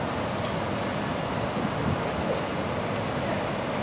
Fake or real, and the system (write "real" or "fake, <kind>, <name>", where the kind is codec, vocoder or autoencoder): real